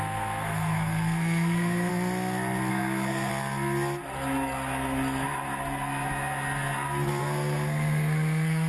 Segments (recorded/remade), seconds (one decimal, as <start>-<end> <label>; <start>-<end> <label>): 0.0-1.9 remade; 1.9-2.7 recorded; 2.7-3.3 remade; 3.3-7.2 recorded; 7.2-8.7 remade

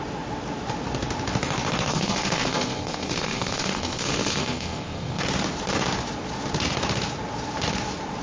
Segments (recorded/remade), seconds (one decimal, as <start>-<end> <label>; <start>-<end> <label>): 0.0-1.9 recorded; 1.9-5.2 remade; 5.2-8.2 recorded

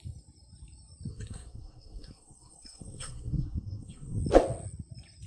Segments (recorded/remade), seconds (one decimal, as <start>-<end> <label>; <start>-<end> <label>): 0.0-1.1 recorded; 1.1-4.2 remade; 4.2-5.3 recorded

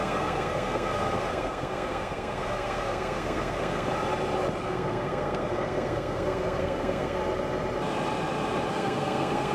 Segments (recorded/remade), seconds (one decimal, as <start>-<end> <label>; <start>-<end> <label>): 0.0-3.9 remade; 3.9-4.6 recorded; 4.6-7.2 remade; 7.2-8.7 recorded; 8.7-9.5 remade

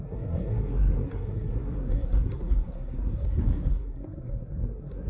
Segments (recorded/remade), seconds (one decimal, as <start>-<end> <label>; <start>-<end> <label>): 0.0-5.1 remade

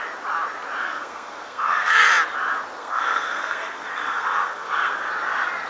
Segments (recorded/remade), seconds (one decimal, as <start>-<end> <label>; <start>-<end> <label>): 0.0-0.8 recorded; 0.8-2.1 remade; 2.1-2.8 recorded; 2.8-5.1 remade; 5.1-5.7 recorded

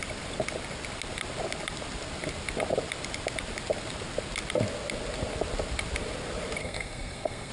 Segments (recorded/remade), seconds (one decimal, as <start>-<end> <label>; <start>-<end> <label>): 0.0-6.6 recorded; 6.6-7.5 remade